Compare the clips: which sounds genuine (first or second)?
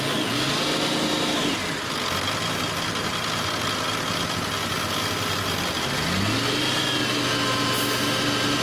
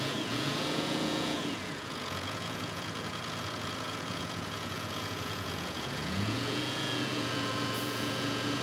first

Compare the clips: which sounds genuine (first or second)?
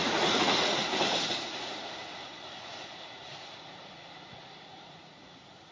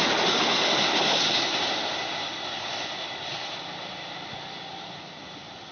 second